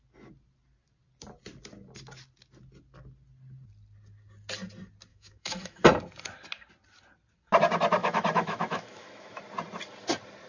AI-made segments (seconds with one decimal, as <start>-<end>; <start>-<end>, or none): 5.1-5.8; 8.0-9.4